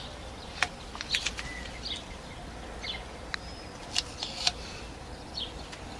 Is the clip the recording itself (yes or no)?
yes